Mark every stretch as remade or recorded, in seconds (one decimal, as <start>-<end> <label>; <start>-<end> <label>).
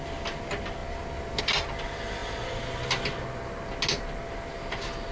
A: 0.0-5.1 recorded